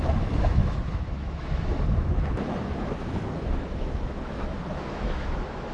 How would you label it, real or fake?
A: fake